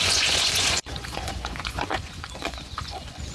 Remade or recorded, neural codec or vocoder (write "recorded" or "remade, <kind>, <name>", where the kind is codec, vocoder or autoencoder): remade, vocoder, Vocos